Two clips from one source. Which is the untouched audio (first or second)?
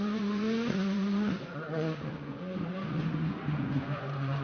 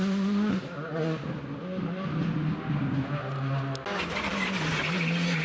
second